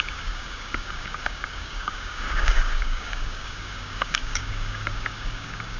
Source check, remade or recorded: remade